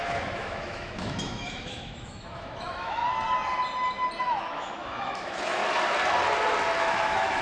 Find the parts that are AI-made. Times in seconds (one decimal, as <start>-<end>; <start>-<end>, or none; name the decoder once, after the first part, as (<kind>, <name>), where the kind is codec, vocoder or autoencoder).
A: 0.0-3.0 (autoencoder, DAC-VAE); 4.2-5.6; 6.8-7.4

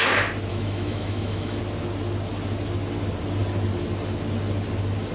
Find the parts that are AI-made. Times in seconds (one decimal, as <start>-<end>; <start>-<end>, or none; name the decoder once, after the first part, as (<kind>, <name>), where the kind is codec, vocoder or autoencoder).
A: 0.5-1.6 (autoencoder, DAC-VAE)

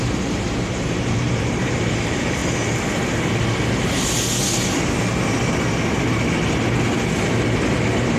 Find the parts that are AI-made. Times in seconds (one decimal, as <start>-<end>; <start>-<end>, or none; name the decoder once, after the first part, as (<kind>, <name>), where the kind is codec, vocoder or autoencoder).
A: 0.0-2.4 (vocoder, BigVGAN v2); 7.3-8.2

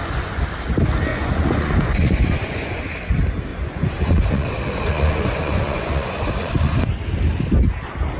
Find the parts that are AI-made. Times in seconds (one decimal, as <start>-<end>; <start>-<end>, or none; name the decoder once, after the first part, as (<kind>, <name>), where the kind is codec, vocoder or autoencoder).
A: 0.0-0.5 (vocoder, Vocos); 1.1-2.8; 3.5-6.9